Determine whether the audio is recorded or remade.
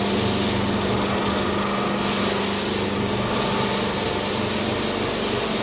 recorded